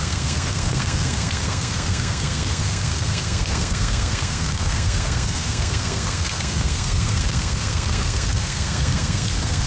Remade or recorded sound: remade